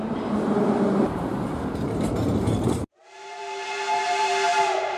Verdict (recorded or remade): remade